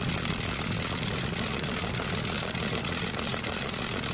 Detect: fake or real fake